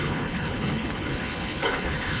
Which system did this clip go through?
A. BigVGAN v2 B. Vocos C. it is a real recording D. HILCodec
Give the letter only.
D